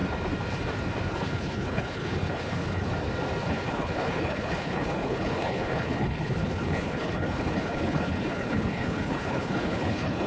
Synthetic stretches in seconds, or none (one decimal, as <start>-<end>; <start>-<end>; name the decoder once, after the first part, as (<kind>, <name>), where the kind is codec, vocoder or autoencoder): 1.1-2.9 (codec, HILCodec); 3.4-10.3